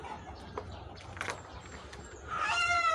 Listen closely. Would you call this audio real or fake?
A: real